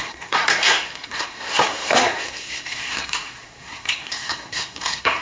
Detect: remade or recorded remade